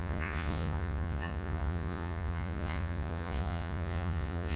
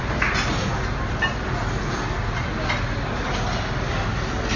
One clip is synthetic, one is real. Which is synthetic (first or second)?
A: first